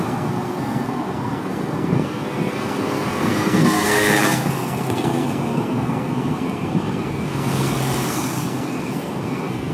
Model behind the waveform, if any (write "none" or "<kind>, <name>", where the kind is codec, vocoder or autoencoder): codec, SNAC